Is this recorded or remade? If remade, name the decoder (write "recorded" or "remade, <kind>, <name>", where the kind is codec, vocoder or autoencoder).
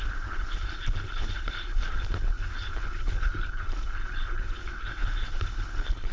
remade, codec, HILCodec